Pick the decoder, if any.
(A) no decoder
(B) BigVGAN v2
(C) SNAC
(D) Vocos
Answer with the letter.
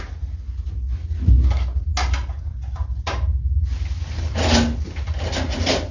A